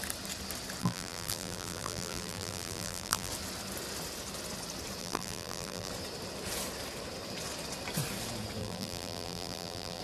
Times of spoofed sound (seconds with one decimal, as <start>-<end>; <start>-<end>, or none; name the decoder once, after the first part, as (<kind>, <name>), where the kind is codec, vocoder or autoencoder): 0.8-3.3 (vocoder, BigVGAN v2); 5.0-5.9; 8.6-10.0